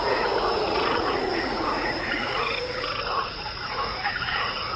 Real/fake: fake